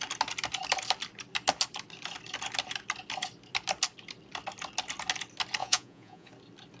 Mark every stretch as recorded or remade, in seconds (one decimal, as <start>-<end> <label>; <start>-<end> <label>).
0.0-5.6 recorded; 5.6-6.3 remade; 6.3-6.8 recorded